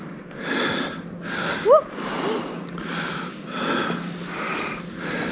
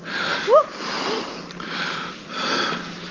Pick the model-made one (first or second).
second